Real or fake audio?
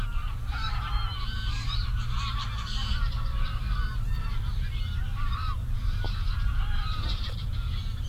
fake